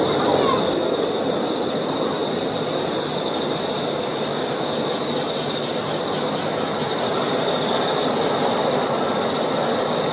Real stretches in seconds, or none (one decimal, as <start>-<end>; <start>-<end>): 0.0-4.3; 4.9-10.1